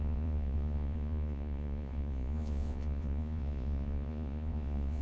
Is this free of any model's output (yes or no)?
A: no